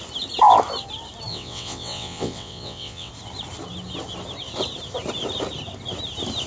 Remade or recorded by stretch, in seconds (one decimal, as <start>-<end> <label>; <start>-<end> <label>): 0.0-1.3 recorded; 1.3-3.1 remade; 3.1-6.5 recorded